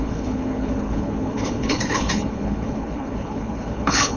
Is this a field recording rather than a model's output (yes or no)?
no